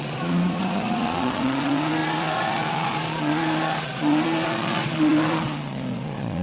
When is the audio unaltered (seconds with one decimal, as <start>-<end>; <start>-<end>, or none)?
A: none